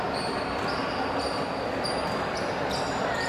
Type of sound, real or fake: real